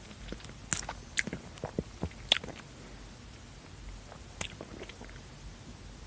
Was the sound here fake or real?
real